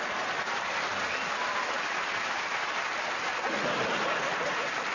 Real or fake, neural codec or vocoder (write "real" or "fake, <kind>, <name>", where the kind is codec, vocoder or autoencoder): real